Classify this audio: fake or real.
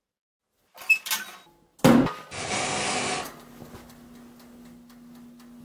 real